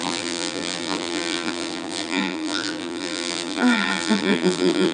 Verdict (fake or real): fake